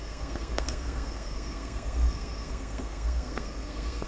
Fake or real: fake